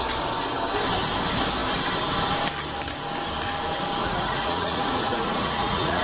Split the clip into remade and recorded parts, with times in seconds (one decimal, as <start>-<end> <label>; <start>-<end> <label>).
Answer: 0.0-4.0 recorded; 4.0-6.0 remade